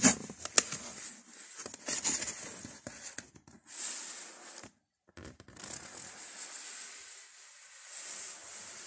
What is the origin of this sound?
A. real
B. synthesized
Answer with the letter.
A